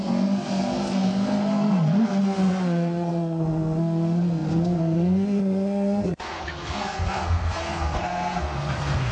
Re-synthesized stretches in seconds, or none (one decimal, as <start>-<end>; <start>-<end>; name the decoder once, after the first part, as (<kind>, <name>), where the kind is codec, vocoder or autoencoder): 0.0-9.1 (codec, SNAC)